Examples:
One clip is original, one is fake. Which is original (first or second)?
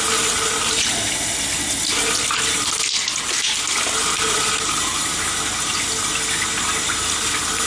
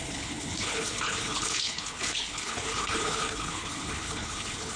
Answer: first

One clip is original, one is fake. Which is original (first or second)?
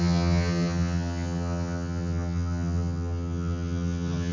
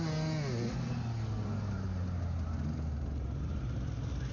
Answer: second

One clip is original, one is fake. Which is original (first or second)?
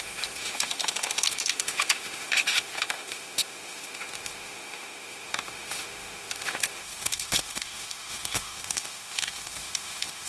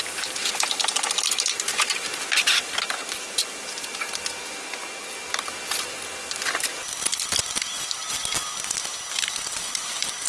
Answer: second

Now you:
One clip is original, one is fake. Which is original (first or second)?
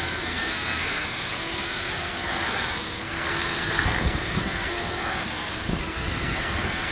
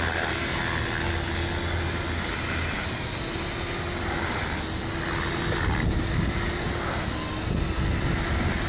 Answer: second